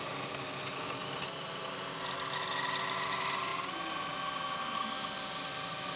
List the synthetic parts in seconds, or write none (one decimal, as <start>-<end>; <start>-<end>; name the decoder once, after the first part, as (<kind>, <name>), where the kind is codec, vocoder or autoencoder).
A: none